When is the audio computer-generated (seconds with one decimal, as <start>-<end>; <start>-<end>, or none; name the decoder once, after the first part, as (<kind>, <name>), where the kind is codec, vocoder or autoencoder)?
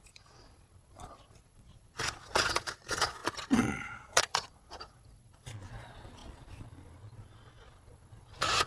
0.0-8.7 (vocoder, Vocos)